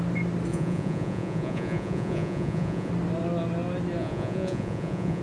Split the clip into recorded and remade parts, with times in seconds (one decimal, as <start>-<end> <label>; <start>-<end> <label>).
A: 0.0-0.5 recorded; 0.5-2.9 remade; 2.9-4.0 recorded; 4.0-5.2 remade